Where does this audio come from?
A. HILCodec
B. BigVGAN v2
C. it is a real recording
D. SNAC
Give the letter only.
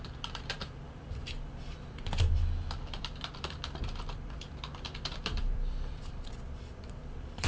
B